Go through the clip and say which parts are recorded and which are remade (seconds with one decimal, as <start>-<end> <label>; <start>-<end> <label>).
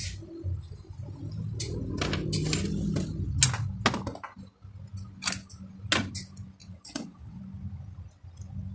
0.0-6.6 recorded; 6.6-7.4 remade; 7.4-8.7 recorded